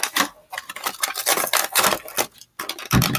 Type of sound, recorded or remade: recorded